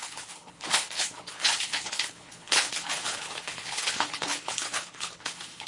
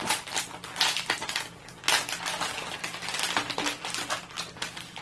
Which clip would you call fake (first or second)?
first